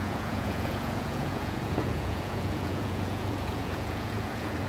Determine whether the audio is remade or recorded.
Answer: remade